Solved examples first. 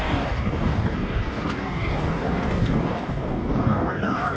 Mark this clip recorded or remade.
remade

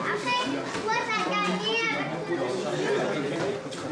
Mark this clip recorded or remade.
recorded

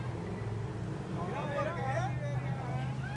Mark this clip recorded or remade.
recorded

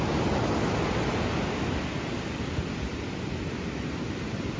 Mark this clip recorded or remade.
recorded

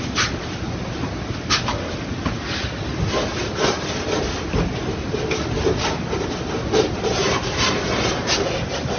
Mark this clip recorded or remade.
recorded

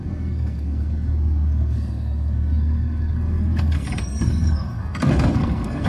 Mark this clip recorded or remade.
remade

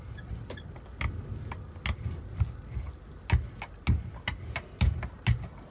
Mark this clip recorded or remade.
recorded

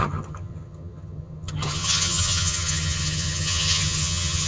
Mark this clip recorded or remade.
remade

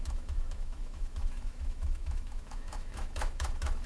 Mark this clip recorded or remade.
remade